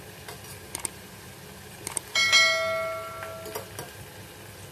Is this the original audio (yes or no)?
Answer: yes